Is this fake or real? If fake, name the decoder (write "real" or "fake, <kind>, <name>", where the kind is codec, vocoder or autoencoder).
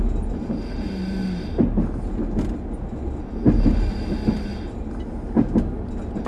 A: real